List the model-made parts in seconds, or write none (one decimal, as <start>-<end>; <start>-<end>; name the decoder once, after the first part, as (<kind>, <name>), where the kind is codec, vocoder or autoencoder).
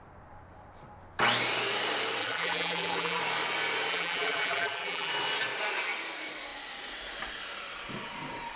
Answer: 2.2-3.2 (vocoder, BigVGAN v2); 3.9-5.1